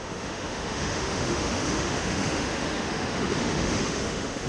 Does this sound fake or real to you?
fake